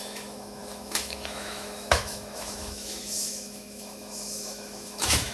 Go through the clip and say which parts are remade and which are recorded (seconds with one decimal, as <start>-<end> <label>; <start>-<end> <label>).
0.0-5.3 remade